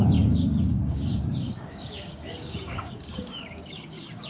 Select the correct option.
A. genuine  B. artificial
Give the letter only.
B